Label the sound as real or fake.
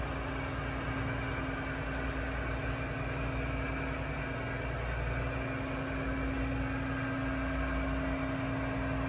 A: real